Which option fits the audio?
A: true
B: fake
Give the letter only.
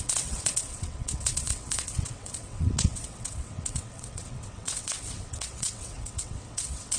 B